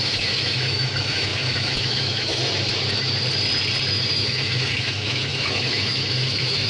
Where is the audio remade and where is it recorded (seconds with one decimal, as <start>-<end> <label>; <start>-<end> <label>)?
0.0-2.4 remade; 2.4-3.9 recorded; 3.9-6.7 remade